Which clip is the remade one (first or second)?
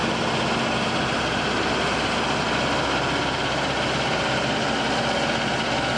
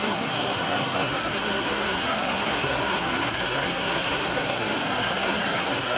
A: second